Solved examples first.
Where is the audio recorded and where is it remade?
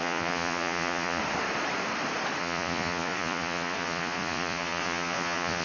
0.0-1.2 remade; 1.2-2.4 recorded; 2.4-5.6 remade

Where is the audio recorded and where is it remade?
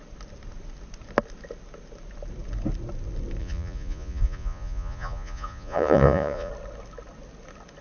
0.0-3.4 recorded; 3.4-6.5 remade; 6.5-7.8 recorded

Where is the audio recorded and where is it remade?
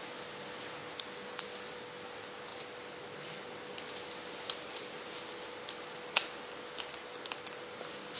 0.0-8.2 recorded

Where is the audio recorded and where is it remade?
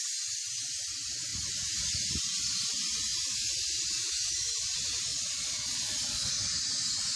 0.0-5.1 recorded; 5.1-6.3 remade; 6.3-7.2 recorded